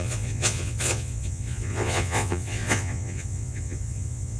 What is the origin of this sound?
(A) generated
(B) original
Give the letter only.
A